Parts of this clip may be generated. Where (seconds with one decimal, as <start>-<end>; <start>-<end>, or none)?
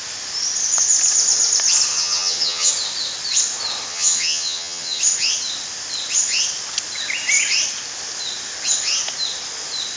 1.9-2.7; 3.9-5.0